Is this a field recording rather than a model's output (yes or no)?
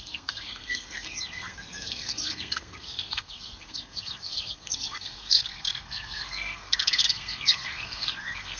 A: no